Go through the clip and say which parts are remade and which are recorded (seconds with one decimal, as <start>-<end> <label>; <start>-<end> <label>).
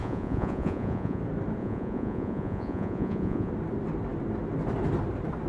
0.0-1.2 remade; 1.2-1.6 recorded; 1.6-3.5 remade; 3.5-5.5 recorded